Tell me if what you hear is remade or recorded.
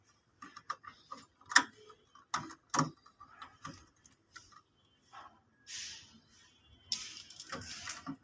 recorded